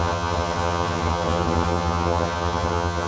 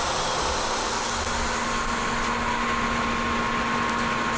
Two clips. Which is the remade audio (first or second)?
first